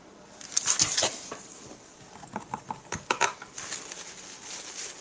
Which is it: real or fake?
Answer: real